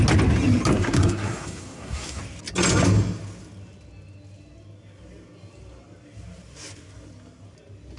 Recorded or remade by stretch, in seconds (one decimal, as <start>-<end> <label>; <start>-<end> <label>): 0.0-0.7 recorded; 0.7-2.2 remade; 2.2-8.0 recorded